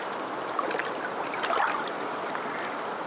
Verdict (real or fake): fake